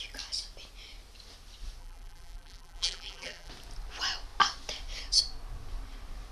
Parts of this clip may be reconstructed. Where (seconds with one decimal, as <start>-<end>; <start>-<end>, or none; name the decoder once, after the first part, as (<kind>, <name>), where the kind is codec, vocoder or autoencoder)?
1.8-3.5 (vocoder, BigVGAN v2)